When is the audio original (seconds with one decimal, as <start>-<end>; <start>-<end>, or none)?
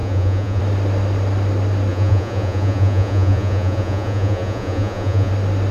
0.6-1.9; 5.3-5.7